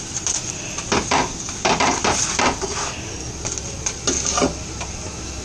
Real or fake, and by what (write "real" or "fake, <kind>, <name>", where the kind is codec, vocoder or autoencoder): real